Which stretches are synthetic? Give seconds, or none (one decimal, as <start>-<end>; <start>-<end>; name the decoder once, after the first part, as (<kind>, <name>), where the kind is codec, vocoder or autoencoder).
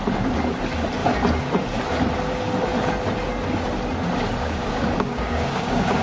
4.4-6.0 (codec, DAC)